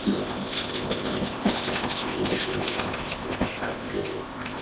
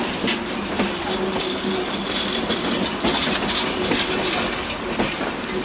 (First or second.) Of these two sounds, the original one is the second